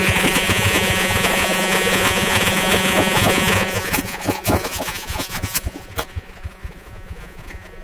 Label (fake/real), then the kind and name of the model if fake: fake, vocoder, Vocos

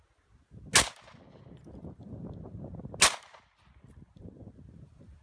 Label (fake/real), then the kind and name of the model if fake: real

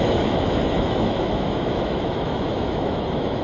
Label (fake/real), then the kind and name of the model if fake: fake, autoencoder, DAC-VAE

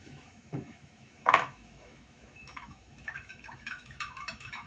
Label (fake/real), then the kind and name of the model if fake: fake, autoencoder, DAC-VAE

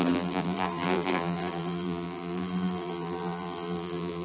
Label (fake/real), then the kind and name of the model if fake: fake, vocoder, BigVGAN v2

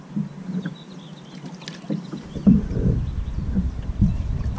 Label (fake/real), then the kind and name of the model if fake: real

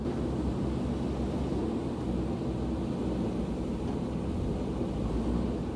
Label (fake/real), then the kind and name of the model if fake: real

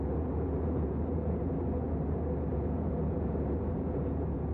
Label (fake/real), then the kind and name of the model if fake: fake, vocoder, Vocos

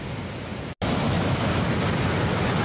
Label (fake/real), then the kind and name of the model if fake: real